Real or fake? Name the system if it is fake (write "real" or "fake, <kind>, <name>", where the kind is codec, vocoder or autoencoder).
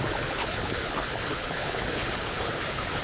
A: fake, codec, HILCodec